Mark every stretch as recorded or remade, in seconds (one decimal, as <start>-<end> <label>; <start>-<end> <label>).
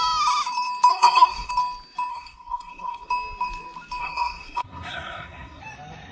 0.0-0.9 recorded; 0.9-1.5 remade; 1.5-2.1 recorded; 2.1-3.1 remade; 3.1-4.0 recorded; 4.0-5.6 remade; 5.6-6.1 recorded